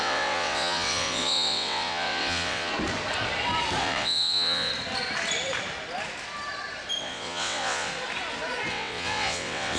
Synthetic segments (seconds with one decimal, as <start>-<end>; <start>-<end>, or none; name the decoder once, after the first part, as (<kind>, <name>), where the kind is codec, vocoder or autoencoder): 0.0-2.7 (vocoder, WaveNeXt); 3.8-4.7; 7.0-7.9; 8.7-9.8

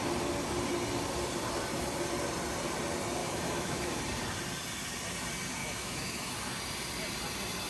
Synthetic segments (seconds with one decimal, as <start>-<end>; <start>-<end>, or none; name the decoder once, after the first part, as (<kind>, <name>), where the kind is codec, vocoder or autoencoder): 3.2-4.0 (autoencoder, DAC-VAE); 5.6-6.3

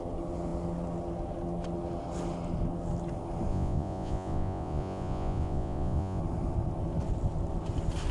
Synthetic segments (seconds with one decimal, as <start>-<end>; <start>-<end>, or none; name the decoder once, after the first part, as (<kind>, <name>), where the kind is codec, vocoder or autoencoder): 3.5-6.2 (vocoder, Vocos)

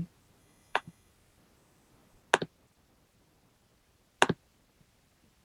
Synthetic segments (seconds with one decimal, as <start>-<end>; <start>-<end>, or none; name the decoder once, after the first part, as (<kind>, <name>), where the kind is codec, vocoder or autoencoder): 0.4-1.1 (autoencoder, DAC-VAE)

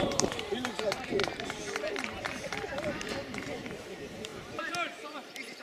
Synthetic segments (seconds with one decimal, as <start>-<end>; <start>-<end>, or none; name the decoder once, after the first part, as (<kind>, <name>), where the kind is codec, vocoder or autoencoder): 0.0-1.2 (vocoder, BigVGAN v2); 1.9-5.6

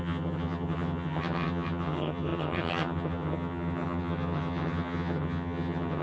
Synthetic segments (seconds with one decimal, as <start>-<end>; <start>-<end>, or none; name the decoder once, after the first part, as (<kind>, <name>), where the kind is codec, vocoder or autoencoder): 0.0-6.0 (vocoder, HiFi-GAN)

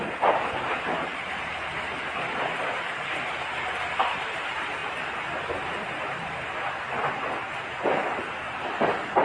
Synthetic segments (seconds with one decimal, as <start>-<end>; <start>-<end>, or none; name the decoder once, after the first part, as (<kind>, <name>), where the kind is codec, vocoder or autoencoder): none

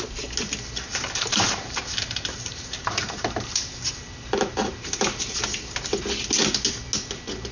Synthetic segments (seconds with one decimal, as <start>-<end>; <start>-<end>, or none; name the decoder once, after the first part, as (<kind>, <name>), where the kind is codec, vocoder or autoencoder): 0.9-5.2 (vocoder, BigVGAN v2)